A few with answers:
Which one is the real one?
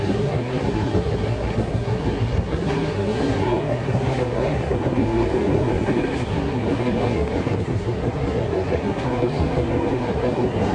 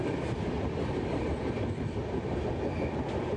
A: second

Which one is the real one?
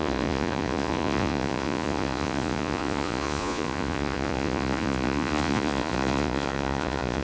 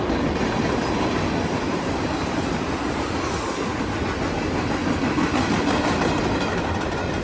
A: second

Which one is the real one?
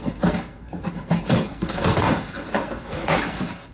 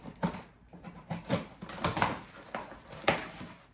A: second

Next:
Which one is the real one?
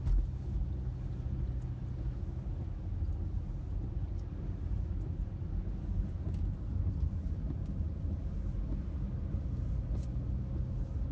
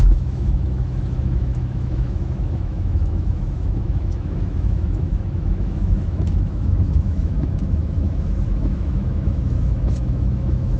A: first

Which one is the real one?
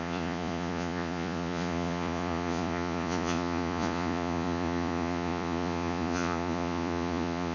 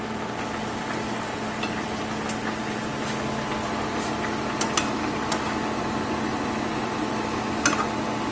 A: second